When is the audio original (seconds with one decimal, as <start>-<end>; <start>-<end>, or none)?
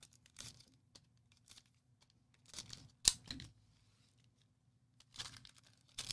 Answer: 1.9-5.6